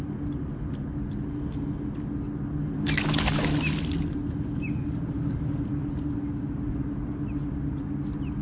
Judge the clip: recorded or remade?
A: recorded